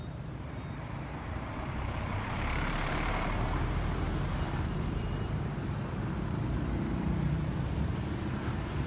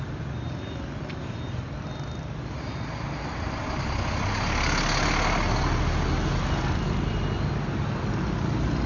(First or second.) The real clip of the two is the second